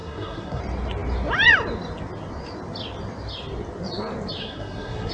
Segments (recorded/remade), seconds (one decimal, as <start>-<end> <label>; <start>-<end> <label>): 0.0-0.6 remade; 0.6-4.4 recorded; 4.4-5.1 remade